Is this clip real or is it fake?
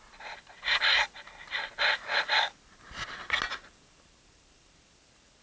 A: real